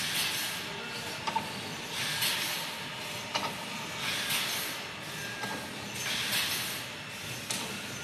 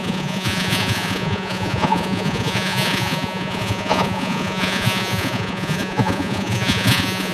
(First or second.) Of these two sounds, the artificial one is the second